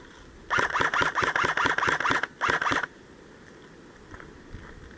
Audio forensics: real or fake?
real